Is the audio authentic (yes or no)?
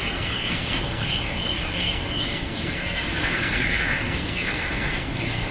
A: no